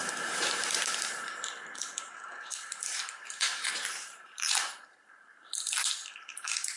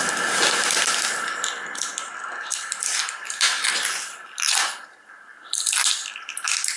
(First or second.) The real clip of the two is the second